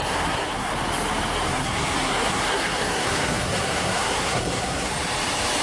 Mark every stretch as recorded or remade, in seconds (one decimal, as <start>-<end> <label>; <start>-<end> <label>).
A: 0.0-0.7 remade; 0.7-1.5 recorded; 1.5-4.9 remade; 4.9-5.6 recorded